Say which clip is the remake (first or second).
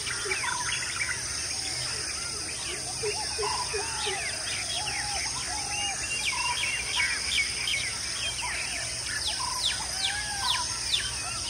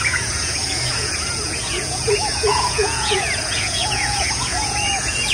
second